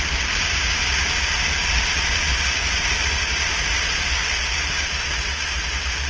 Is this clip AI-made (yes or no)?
no